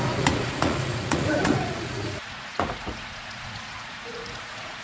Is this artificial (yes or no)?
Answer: yes